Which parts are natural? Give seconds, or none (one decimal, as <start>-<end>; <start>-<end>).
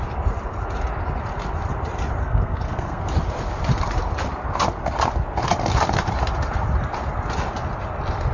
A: 0.0-2.2; 3.0-8.3